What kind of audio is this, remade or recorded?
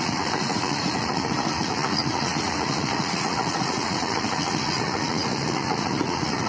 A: remade